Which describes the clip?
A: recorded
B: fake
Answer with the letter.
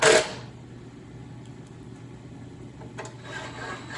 A